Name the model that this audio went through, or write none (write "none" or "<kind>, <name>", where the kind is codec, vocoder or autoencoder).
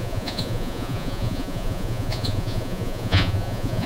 vocoder, Vocos